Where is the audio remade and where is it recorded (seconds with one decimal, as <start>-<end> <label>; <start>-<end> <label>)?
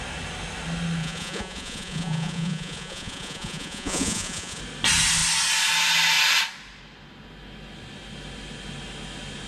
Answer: 0.0-1.0 recorded; 1.0-4.6 remade; 4.6-9.5 recorded